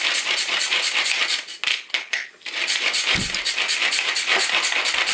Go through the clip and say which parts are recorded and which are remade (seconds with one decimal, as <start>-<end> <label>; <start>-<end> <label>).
0.0-1.7 recorded; 1.7-2.3 remade; 2.3-5.1 recorded